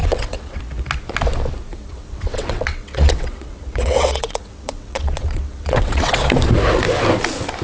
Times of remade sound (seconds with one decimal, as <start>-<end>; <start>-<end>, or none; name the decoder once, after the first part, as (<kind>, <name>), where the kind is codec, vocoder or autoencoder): 0.0-0.6 (vocoder, WaveNeXt); 1.7-6.2